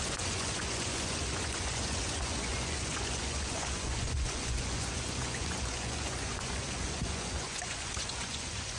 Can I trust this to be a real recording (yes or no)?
no